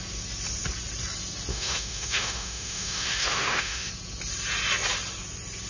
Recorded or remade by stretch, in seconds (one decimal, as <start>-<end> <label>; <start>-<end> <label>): 0.0-1.5 recorded; 1.5-3.9 remade; 3.9-5.7 recorded